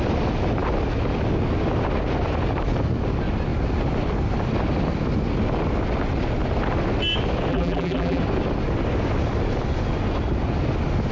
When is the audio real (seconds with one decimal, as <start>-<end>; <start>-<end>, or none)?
0.0-7.5; 8.2-11.1